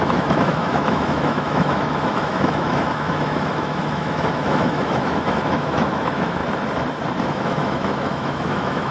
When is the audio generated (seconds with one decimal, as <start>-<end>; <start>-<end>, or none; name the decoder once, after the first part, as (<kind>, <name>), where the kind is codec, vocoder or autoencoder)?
0.0-6.4 (autoencoder, DAC-VAE); 7.2-8.9